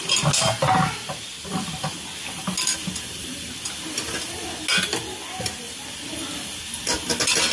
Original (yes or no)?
yes